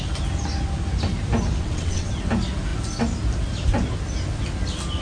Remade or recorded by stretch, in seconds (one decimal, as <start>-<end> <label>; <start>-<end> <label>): 0.0-1.6 recorded; 1.6-2.1 remade; 2.1-5.0 recorded